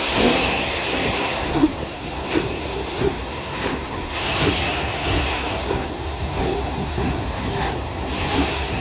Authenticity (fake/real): fake